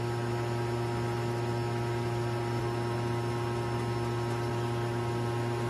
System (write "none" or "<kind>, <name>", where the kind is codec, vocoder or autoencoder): none